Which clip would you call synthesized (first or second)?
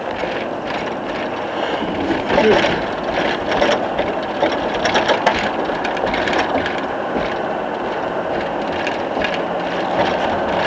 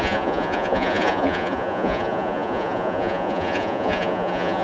second